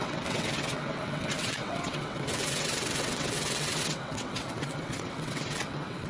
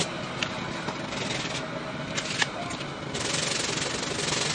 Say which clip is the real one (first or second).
second